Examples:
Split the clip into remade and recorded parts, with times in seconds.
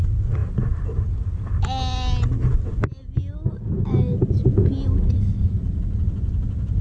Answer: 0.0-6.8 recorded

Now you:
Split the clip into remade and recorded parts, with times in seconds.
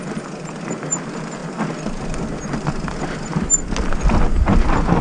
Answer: 0.0-5.0 recorded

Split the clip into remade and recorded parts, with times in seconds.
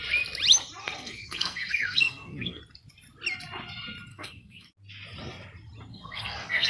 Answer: 0.0-0.8 recorded; 0.8-2.6 remade; 2.6-4.1 recorded; 4.1-4.7 remade; 4.7-5.9 recorded; 5.9-6.7 remade